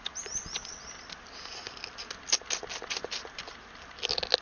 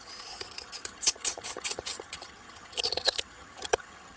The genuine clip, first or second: first